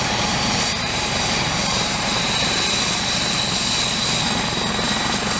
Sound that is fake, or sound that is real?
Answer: fake